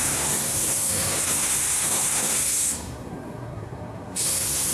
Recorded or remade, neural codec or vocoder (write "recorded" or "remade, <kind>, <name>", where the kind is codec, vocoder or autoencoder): remade, codec, SNAC